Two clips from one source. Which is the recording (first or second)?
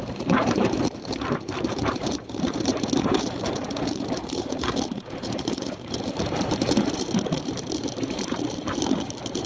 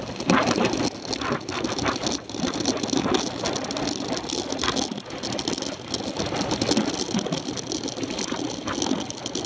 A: second